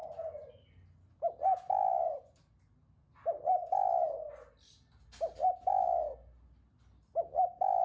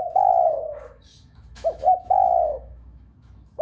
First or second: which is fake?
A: second